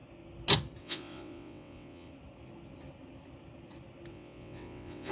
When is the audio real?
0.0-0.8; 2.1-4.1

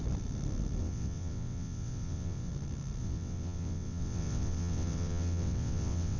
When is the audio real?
0.0-0.8; 2.5-3.0

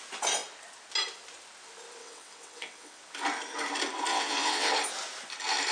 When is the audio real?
0.0-2.0; 3.0-4.1; 4.7-5.7

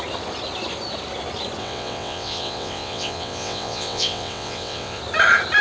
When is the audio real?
0.0-1.6; 5.0-5.6